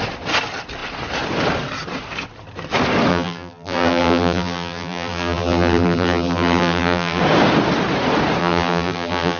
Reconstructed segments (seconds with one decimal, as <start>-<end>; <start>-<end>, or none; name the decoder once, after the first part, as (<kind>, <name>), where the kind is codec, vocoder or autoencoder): 3.1-7.2 (vocoder, BigVGAN v2); 8.4-9.4